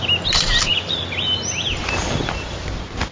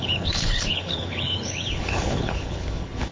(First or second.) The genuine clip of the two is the first